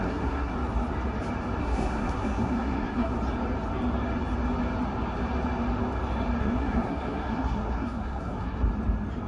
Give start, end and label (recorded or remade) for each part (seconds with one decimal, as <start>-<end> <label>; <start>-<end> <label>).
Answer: 0.0-0.5 remade; 0.5-1.6 recorded; 1.6-3.1 remade; 3.1-6.4 recorded; 6.4-8.7 remade; 8.7-9.3 recorded